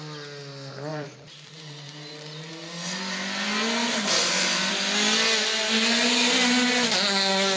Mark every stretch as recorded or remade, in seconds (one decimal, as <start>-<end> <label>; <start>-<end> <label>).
0.0-0.9 recorded; 0.9-2.5 remade; 2.5-3.8 recorded; 3.8-4.7 remade; 4.7-7.6 recorded